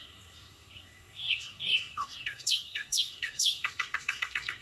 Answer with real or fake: fake